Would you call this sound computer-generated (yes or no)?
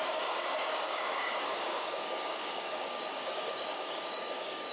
yes